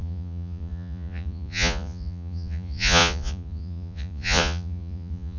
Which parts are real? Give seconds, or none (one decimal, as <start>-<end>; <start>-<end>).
none